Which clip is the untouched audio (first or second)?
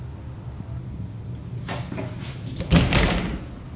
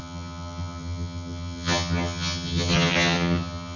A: first